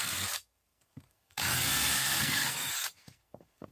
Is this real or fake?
fake